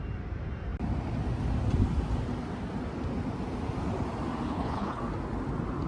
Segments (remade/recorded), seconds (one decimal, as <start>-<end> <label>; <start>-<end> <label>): 0.0-4.5 recorded; 4.5-5.0 remade; 5.0-5.9 recorded